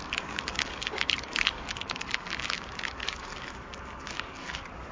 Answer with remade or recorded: remade